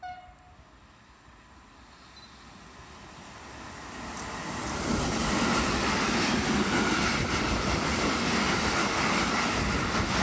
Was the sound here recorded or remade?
recorded